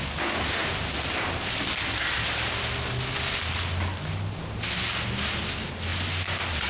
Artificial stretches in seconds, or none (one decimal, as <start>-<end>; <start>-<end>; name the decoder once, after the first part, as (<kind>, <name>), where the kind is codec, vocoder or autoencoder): none